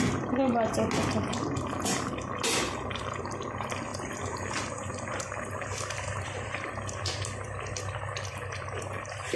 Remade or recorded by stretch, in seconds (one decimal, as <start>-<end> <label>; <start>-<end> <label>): 0.0-9.4 recorded